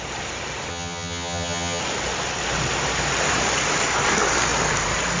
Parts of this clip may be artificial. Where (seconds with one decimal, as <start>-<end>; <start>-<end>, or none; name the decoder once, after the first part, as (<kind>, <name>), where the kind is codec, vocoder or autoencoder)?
0.7-1.8 (vocoder, HiFi-GAN)